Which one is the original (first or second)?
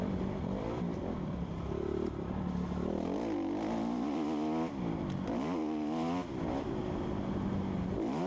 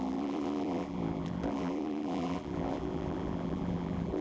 first